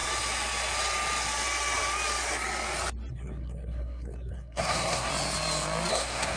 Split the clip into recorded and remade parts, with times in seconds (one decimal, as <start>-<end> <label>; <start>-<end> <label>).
0.0-3.1 recorded; 3.1-5.1 remade; 5.1-5.9 recorded; 5.9-6.4 remade